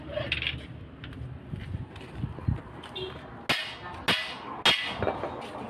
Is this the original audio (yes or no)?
yes